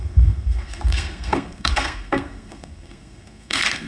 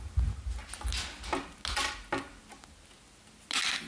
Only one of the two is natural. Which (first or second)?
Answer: second